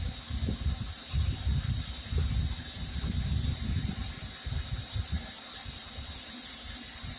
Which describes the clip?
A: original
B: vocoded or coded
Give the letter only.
A